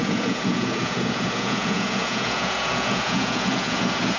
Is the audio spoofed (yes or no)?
yes